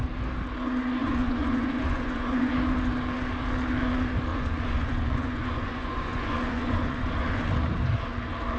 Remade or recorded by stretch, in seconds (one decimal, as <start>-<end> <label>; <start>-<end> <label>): 0.0-1.0 recorded; 1.0-2.5 remade; 2.5-4.3 recorded; 4.3-7.5 remade; 7.5-8.6 recorded